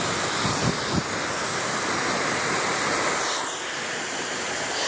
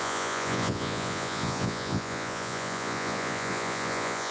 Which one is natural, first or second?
first